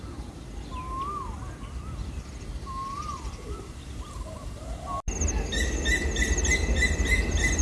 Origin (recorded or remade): recorded